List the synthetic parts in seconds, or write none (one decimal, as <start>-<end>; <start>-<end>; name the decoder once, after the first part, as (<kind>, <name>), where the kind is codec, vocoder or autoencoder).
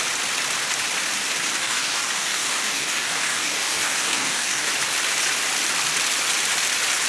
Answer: 1.6-4.7 (codec, DAC)